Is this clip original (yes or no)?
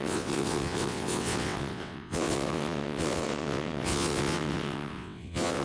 no